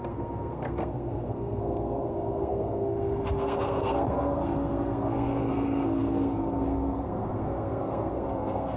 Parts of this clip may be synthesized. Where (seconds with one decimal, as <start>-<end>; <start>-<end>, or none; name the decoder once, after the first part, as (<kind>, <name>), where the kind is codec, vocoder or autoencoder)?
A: 0.0-8.8 (codec, SNAC)